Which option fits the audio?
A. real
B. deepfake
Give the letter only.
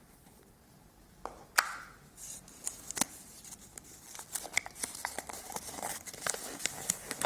A